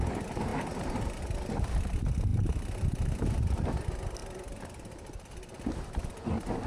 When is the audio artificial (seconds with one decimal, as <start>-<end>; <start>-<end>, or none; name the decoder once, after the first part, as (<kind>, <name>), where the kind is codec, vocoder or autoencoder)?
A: none